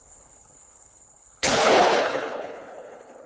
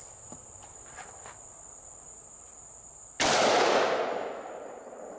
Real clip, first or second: second